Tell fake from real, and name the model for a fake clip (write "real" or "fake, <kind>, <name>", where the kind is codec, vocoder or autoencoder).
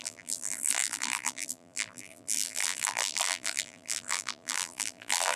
fake, vocoder, BigVGAN v2